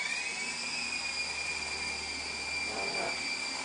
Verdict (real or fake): real